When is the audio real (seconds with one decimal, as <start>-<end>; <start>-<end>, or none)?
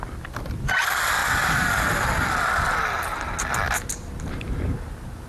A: 0.0-5.3